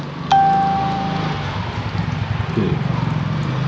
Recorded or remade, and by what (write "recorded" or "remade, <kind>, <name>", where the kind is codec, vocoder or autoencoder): recorded